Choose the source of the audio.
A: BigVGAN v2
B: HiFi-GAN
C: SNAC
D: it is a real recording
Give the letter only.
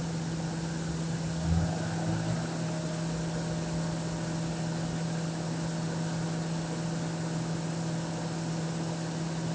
D